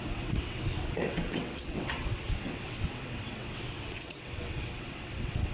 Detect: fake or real fake